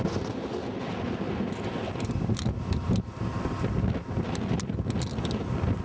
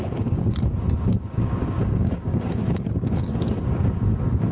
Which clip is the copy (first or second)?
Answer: second